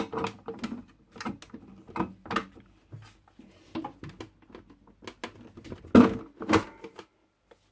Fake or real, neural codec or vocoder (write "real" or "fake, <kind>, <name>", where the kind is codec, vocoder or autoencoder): real